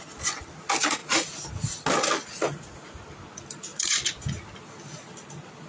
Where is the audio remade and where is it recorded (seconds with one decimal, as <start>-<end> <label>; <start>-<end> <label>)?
0.0-1.0 recorded; 1.0-1.5 remade; 1.5-2.2 recorded; 2.2-3.0 remade; 3.0-3.7 recorded; 3.7-4.2 remade; 4.2-5.7 recorded